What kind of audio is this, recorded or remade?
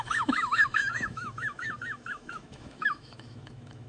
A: remade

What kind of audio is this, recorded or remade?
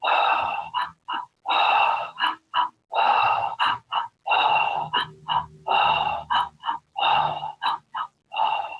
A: recorded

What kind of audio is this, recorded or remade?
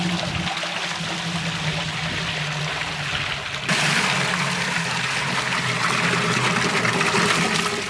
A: recorded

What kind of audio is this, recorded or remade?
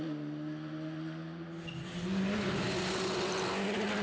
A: recorded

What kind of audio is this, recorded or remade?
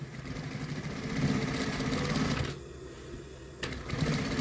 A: recorded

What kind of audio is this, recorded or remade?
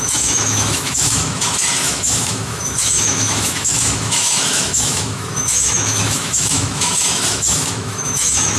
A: remade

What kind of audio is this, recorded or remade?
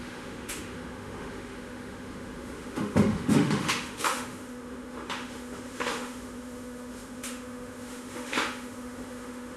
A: remade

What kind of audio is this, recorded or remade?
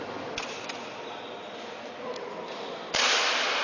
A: recorded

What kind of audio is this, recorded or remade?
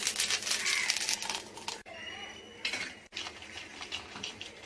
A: recorded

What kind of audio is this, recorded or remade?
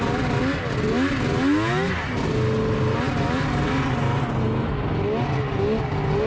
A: recorded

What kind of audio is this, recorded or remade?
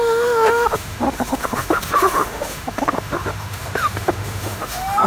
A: remade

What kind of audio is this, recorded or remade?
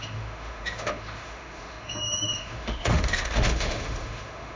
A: remade